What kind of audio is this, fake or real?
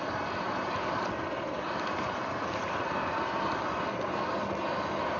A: real